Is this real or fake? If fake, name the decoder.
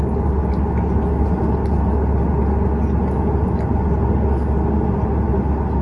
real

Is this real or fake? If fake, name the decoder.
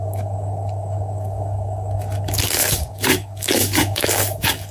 fake, codec, DAC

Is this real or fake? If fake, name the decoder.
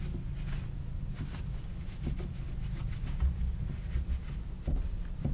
real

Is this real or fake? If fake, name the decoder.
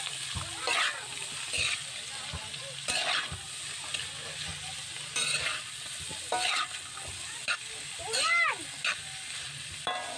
real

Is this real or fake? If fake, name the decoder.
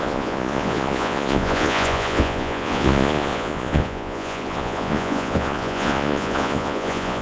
fake, vocoder, Vocos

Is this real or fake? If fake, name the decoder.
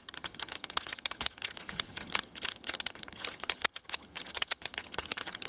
fake, vocoder, HiFi-GAN